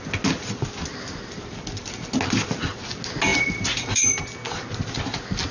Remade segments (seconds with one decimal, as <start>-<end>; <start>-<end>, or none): 3.3-4.2